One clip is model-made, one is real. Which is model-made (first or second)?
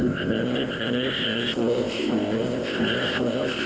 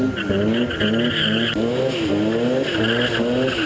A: first